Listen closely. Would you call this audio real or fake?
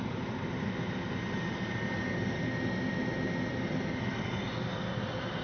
real